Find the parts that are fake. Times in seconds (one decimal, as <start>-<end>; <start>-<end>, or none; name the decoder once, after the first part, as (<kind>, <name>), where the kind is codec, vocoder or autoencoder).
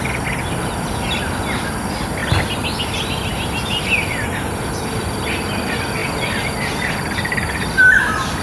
none